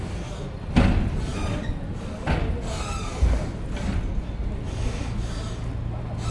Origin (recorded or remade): recorded